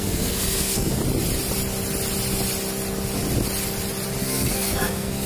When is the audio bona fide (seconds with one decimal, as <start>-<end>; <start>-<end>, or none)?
1.0-4.2